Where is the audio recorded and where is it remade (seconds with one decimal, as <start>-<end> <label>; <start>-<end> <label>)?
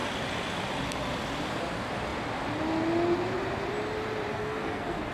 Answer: 0.0-4.3 recorded; 4.3-5.1 remade